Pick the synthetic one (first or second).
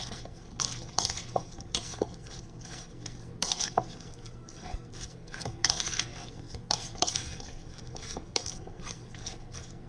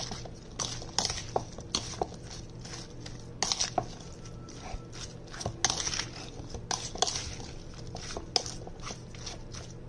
first